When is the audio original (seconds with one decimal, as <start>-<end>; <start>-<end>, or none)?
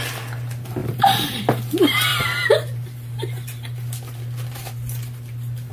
0.0-0.8; 1.4-2.1